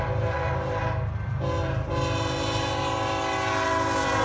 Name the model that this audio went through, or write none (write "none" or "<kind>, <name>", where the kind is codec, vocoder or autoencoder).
none